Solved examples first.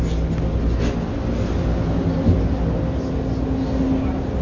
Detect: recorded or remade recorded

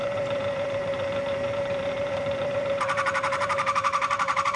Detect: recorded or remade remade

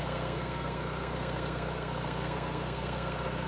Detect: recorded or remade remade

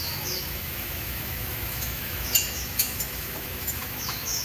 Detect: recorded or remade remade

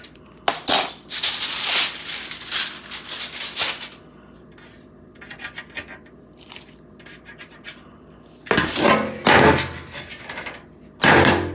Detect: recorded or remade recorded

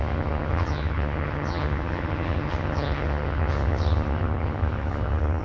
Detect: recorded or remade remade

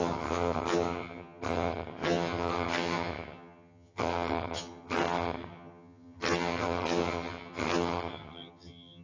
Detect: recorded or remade remade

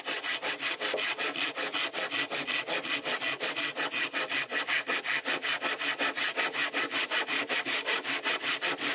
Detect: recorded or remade recorded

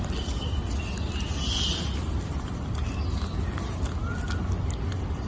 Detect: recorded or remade recorded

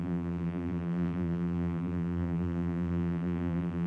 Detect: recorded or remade remade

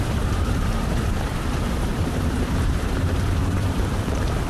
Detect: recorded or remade remade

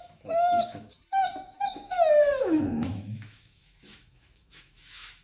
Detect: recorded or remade remade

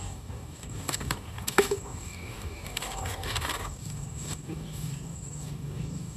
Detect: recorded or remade remade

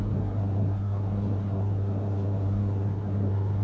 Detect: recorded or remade remade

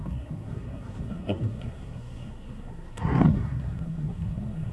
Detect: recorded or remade remade